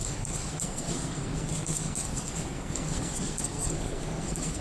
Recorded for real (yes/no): no